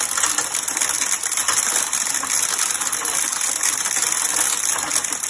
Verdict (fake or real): real